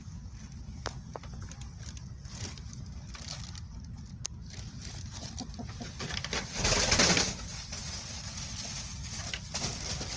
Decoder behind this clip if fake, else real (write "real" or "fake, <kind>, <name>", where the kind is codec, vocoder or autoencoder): real